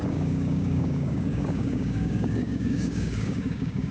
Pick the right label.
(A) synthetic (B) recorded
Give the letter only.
A